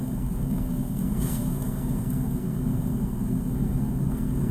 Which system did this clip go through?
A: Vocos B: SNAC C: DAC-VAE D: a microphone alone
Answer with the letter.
B